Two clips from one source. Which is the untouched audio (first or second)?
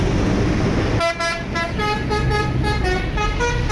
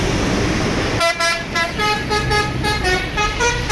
first